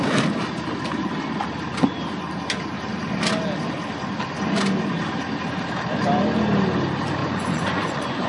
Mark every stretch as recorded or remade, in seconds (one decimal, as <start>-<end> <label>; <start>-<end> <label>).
0.0-7.2 recorded; 7.2-8.3 remade